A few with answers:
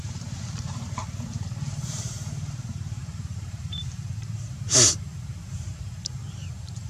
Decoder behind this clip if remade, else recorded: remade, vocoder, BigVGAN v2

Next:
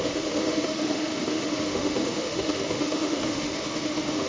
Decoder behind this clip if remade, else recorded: remade, autoencoder, DAC-VAE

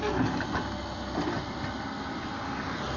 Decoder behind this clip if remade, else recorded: recorded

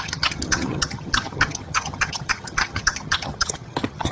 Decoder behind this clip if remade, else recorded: remade, vocoder, HiFi-GAN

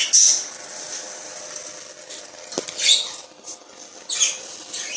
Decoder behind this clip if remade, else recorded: recorded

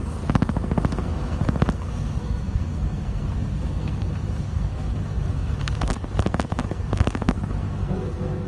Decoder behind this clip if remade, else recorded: remade, codec, SNAC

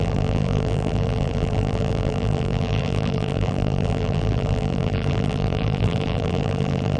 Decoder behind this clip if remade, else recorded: remade, vocoder, BigVGAN v2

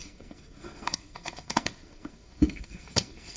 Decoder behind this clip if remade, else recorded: remade, codec, SNAC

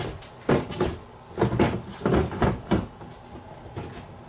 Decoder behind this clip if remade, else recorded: recorded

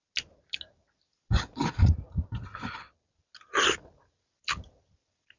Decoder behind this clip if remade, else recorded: recorded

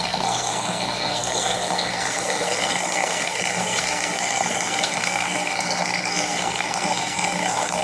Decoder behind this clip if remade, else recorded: remade, codec, SNAC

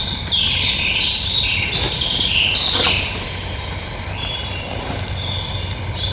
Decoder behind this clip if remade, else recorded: recorded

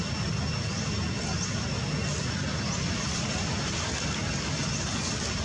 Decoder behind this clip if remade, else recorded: recorded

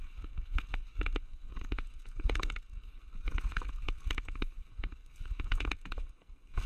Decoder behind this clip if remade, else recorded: remade, codec, SNAC